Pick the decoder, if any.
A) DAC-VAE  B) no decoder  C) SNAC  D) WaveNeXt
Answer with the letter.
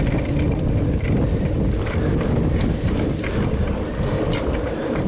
B